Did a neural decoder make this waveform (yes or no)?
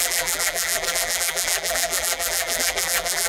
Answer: yes